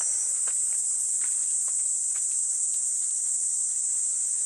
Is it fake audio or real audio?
fake